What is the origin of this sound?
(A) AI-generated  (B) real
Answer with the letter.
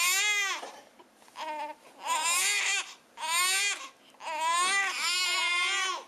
B